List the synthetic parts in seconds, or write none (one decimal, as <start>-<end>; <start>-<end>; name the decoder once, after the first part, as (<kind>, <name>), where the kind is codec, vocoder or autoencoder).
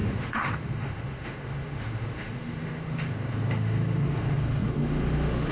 0.0-5.5 (autoencoder, DAC-VAE)